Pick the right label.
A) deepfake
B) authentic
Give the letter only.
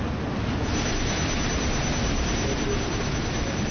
B